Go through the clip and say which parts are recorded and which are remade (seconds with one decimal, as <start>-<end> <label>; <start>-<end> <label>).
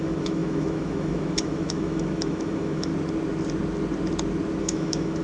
0.0-2.9 remade; 2.9-4.6 recorded; 4.6-5.2 remade